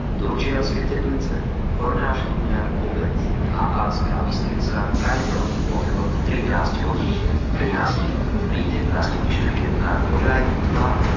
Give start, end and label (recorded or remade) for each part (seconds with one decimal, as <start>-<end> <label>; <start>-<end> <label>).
0.0-7.0 recorded; 7.0-8.5 remade; 8.5-11.2 recorded